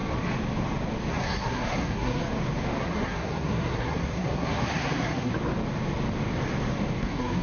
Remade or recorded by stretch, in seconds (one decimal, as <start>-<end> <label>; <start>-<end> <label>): 0.0-1.1 recorded; 1.1-2.2 remade; 2.2-2.8 recorded; 2.8-5.3 remade; 5.3-7.0 recorded; 7.0-7.4 remade